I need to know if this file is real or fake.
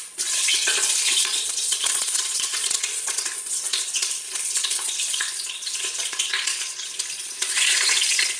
fake